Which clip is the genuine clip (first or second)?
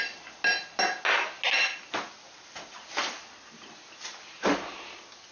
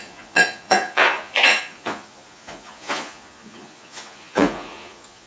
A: first